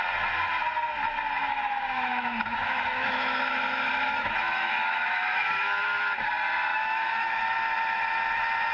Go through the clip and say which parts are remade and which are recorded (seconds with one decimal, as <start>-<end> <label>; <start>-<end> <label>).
0.0-1.5 recorded; 1.5-6.3 remade; 6.3-6.7 recorded; 6.7-7.4 remade; 7.4-8.7 recorded